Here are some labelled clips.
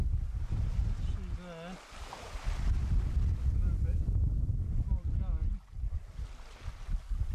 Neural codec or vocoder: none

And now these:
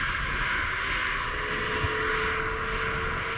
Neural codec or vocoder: none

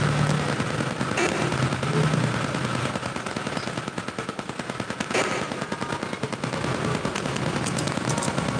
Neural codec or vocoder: none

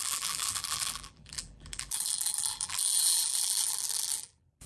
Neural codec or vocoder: vocoder, BigVGAN v2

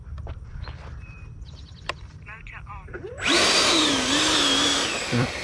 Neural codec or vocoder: vocoder, BigVGAN v2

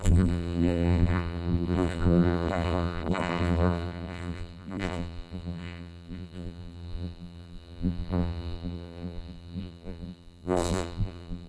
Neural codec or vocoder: vocoder, BigVGAN v2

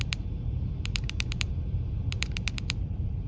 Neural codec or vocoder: vocoder, BigVGAN v2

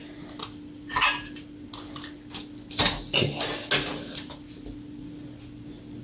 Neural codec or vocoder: none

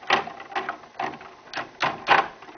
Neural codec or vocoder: none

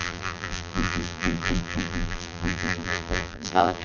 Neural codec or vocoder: vocoder, BigVGAN v2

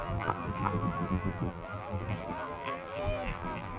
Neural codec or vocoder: vocoder, BigVGAN v2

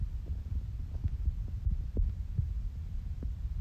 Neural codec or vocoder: vocoder, BigVGAN v2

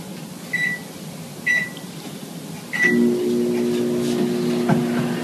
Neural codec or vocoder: none